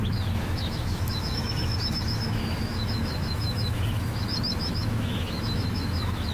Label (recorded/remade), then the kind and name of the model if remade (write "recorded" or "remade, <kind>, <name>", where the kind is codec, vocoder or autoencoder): remade, autoencoder, DAC-VAE